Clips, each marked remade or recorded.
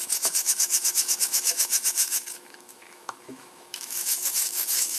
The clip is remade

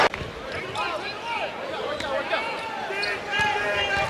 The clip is recorded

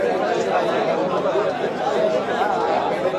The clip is recorded